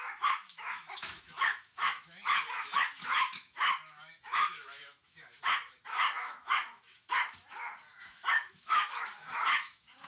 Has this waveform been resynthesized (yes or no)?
yes